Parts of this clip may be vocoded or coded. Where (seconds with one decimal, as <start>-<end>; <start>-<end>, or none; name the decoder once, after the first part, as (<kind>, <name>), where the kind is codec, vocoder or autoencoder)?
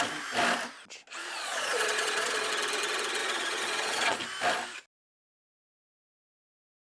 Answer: 1.2-2.5 (vocoder, Vocos); 3.2-4.2